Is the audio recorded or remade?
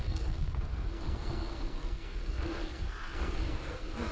remade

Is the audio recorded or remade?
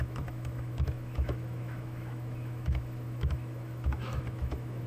remade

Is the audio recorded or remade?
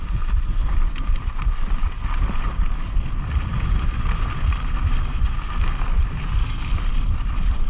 remade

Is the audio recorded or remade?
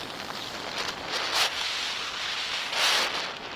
recorded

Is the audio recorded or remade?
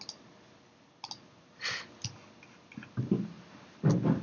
recorded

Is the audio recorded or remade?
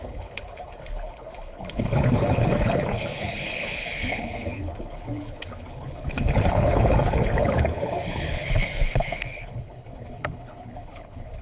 remade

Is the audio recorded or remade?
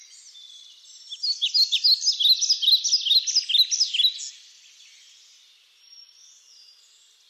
recorded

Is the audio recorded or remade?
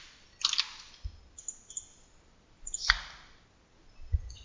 recorded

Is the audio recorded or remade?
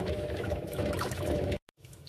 remade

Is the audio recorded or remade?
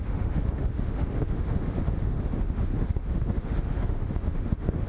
remade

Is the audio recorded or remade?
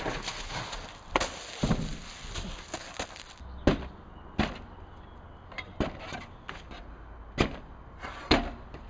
recorded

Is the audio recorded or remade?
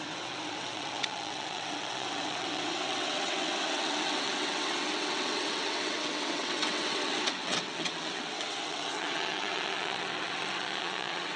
remade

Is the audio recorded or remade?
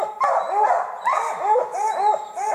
recorded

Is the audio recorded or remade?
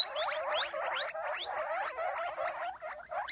recorded